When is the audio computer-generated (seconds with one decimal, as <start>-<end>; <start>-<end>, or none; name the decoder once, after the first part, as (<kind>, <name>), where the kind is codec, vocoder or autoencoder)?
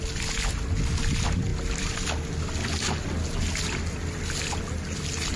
none